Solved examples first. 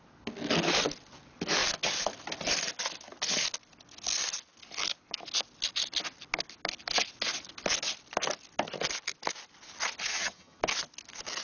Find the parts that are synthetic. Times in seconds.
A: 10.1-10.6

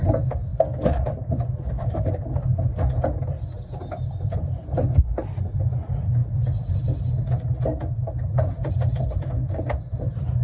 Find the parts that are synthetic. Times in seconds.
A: none

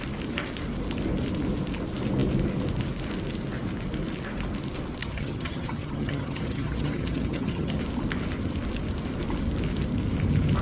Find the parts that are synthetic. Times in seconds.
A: 5.0-7.8

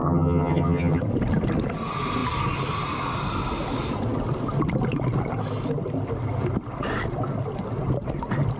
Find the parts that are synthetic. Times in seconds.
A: 0.0-1.0

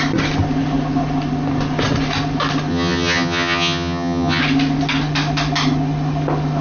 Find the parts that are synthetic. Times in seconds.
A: 2.7-4.4

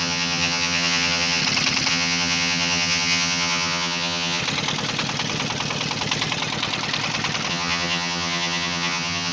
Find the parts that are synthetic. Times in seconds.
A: 0.0-1.4; 1.9-4.4; 7.5-9.3

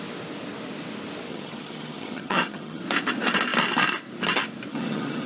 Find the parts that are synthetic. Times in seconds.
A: 1.3-2.8; 4.7-5.3

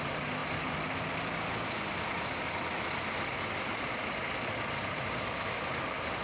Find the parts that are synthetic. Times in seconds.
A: none